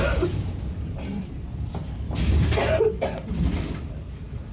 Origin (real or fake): fake